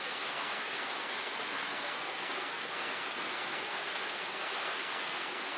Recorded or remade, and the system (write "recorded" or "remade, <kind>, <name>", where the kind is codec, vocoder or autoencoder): remade, codec, SNAC